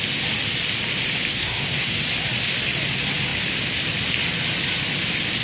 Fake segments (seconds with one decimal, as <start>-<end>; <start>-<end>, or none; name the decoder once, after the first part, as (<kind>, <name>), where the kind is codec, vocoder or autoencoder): 1.3-2.0 (codec, SNAC)